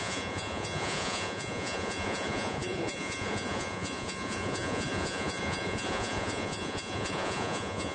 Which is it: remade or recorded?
remade